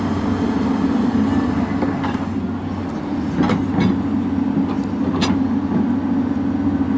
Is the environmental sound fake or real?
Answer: real